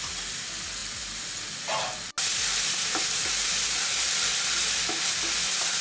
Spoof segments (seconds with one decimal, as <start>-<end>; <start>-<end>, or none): none